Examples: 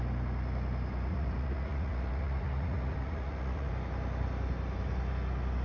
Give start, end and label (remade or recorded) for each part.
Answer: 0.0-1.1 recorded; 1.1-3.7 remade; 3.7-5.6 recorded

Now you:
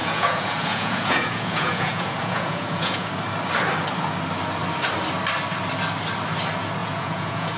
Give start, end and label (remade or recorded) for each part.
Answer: 0.0-3.1 remade; 3.1-6.8 recorded; 6.8-7.6 remade

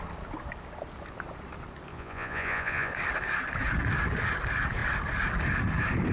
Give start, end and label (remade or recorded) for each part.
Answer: 0.0-1.9 recorded; 1.9-2.9 remade; 2.9-6.1 recorded

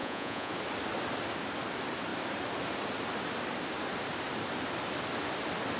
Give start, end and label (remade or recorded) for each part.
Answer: 0.0-0.5 remade; 0.5-5.8 recorded

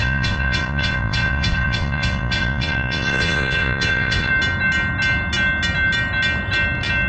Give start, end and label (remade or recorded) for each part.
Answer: 0.0-4.3 remade; 4.3-7.1 recorded

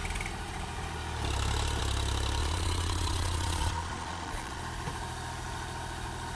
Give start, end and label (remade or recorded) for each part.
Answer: 0.0-2.4 recorded; 2.4-4.6 remade; 4.6-6.4 recorded

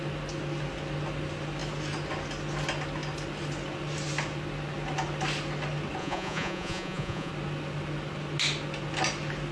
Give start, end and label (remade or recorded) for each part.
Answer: 0.0-6.0 recorded; 6.0-7.3 remade; 7.3-9.5 recorded